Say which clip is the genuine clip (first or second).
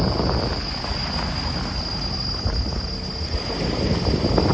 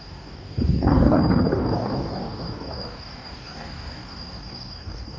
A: first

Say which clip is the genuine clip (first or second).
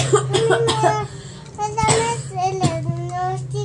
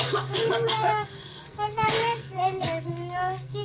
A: first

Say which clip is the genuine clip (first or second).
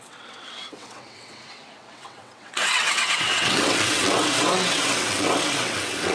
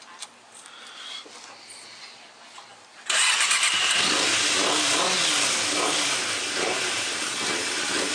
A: second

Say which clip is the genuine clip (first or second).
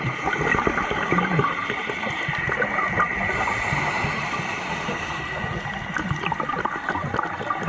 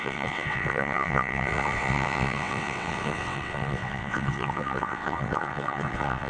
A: first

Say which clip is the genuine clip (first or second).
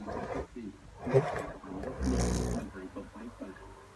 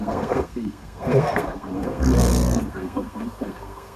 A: first